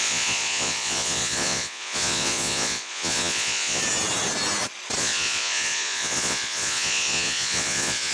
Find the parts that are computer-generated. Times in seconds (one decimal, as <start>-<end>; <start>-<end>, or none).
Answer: 0.0-3.8; 5.0-8.1